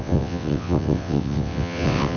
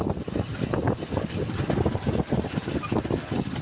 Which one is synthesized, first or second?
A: first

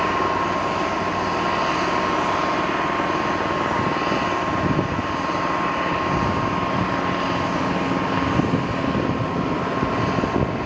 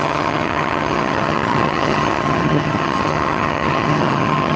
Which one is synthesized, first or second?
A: second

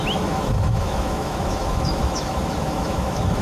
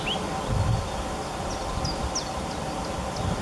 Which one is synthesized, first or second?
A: first